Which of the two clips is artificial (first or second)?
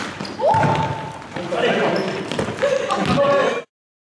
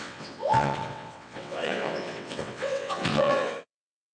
second